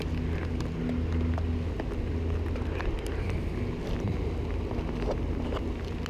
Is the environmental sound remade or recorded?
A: recorded